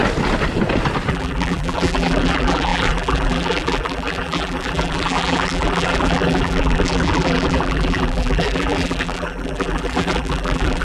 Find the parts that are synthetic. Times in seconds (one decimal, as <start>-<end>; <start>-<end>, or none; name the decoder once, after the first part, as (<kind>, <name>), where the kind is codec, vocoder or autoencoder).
1.1-10.8 (vocoder, BigVGAN v2)